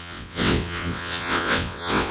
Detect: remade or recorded remade